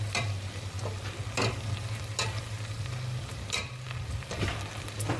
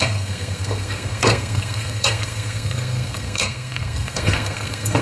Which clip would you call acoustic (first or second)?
first